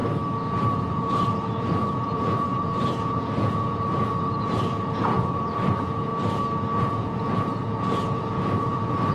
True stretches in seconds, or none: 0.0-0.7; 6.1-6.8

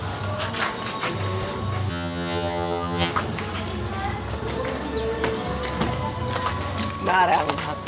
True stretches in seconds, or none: 0.0-1.9; 3.1-7.9

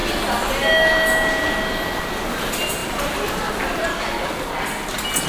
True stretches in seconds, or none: 0.0-3.9; 4.5-5.3

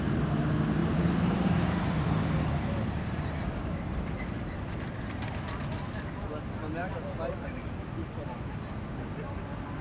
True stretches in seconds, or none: 0.0-0.8; 4.8-6.8; 8.1-9.8

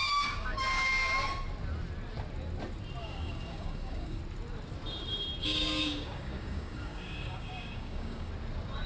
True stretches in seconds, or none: 0.9-3.0; 4.2-5.4; 8.3-8.9